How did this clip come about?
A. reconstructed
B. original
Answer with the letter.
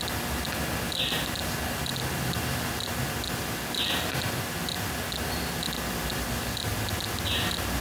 B